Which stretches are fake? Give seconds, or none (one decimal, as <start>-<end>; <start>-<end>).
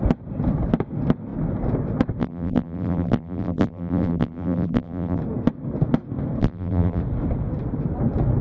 2.2-5.2; 6.4-7.0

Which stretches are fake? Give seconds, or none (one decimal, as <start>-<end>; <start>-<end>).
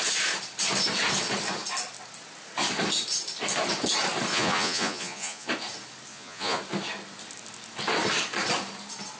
4.3-5.5; 6.1-6.6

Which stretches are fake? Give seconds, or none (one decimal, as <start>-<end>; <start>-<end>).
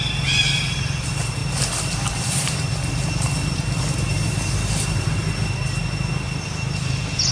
none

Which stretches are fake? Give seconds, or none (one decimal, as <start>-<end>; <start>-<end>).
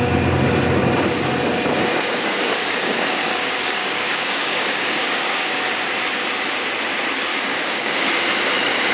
2.1-5.6; 7.3-8.1